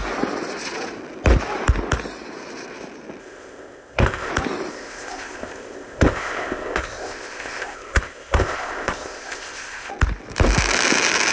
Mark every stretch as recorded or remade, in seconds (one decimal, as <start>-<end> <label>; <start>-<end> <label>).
0.0-3.2 recorded; 3.2-4.3 remade; 4.3-4.7 recorded; 4.7-9.9 remade; 9.9-11.3 recorded